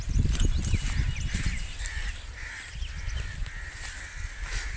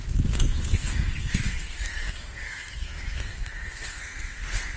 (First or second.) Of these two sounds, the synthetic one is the second